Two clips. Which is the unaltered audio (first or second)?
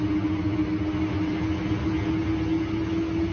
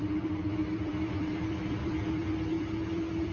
first